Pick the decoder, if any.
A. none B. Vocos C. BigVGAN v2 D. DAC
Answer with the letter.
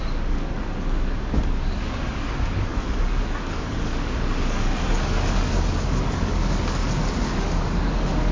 D